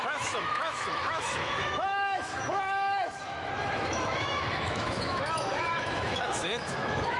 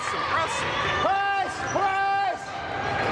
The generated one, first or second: first